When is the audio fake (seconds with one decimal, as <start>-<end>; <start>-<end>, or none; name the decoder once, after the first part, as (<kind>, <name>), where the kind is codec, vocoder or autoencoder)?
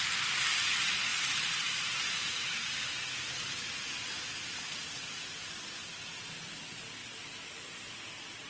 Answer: 1.1-2.9 (vocoder, BigVGAN v2)